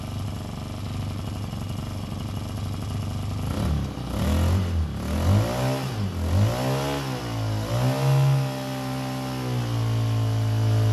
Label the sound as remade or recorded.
recorded